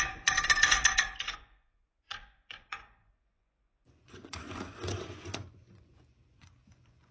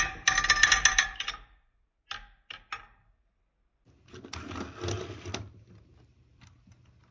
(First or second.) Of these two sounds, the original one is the second